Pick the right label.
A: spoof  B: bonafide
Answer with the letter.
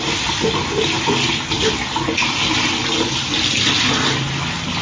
B